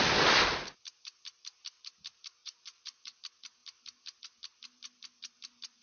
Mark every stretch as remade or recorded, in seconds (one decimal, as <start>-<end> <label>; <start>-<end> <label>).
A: 0.0-2.4 recorded; 2.4-3.1 remade; 3.1-5.8 recorded